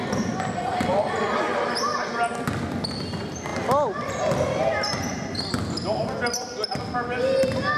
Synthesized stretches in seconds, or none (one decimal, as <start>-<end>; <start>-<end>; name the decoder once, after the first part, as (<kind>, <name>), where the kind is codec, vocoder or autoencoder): none

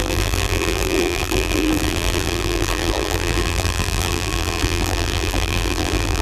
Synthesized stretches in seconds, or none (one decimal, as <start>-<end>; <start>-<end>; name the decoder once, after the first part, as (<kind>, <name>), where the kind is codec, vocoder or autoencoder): 0.0-6.2 (vocoder, BigVGAN v2)

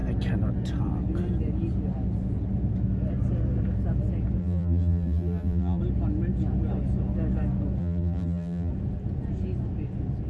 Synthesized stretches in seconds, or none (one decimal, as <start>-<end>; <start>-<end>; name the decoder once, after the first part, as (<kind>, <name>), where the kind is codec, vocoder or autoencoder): 4.4-5.8 (vocoder, BigVGAN v2); 7.8-8.7

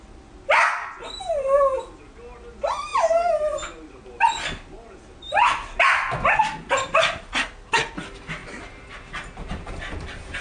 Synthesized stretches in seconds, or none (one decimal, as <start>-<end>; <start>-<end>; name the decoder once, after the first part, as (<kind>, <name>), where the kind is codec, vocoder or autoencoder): 8.4-10.4 (vocoder, BigVGAN v2)

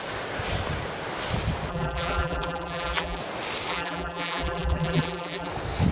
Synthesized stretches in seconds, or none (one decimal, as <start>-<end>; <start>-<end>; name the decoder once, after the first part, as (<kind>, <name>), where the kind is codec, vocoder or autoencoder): 1.7-3.2 (vocoder, BigVGAN v2); 3.7-5.5

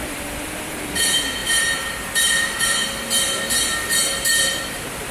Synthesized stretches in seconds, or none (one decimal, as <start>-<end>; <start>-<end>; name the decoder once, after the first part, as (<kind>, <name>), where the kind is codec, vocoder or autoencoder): 0.0-0.9 (vocoder, BigVGAN v2); 1.4-4.5